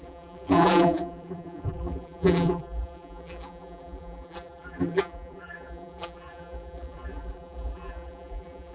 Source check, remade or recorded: remade